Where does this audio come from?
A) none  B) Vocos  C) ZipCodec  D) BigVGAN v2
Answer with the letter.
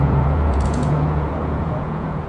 B